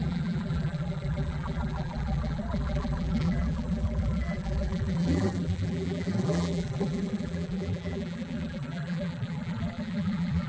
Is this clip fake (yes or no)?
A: yes